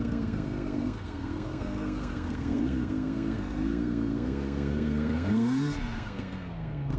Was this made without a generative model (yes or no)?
no